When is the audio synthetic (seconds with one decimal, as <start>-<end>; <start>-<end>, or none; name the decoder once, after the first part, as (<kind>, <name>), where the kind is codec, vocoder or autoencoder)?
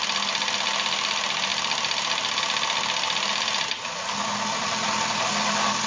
none